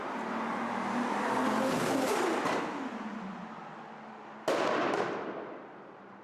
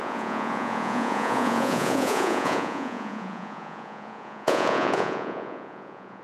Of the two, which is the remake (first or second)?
second